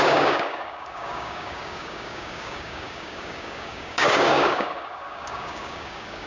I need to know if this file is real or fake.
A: fake